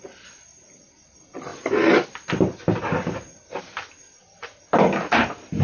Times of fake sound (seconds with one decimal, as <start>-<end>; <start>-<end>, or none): none